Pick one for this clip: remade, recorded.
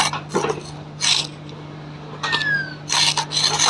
recorded